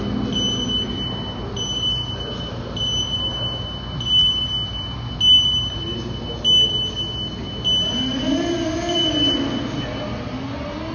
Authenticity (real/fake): real